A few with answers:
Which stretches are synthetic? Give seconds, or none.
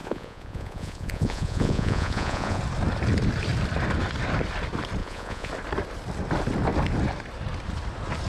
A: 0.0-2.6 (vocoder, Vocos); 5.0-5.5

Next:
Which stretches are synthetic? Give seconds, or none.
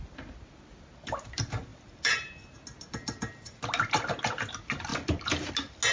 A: none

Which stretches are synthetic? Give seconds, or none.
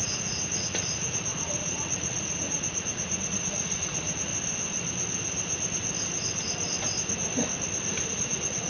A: 0.0-4.3 (vocoder, Vocos); 8.1-8.7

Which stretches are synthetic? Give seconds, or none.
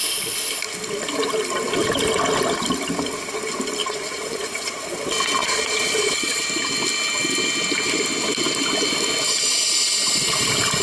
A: 3.8-4.8 (vocoder, Vocos); 5.4-6.4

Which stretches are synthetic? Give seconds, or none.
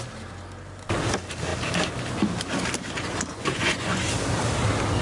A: 3.3-4.0 (vocoder, Vocos)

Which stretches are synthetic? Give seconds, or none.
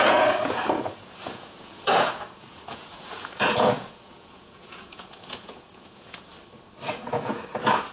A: 0.0-6.3 (vocoder, Vocos); 6.9-7.9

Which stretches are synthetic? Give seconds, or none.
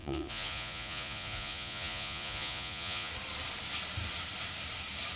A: 0.0-3.1 (vocoder, Vocos)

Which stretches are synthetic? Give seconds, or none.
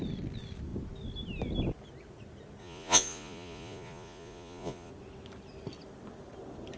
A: 2.6-4.9 (vocoder, Vocos)